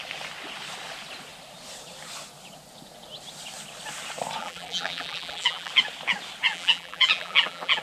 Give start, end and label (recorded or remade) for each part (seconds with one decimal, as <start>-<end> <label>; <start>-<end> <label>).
0.0-4.4 recorded; 4.4-5.7 remade; 5.7-6.5 recorded; 6.5-7.8 remade